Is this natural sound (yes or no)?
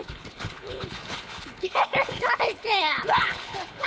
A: no